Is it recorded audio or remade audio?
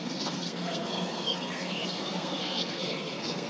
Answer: remade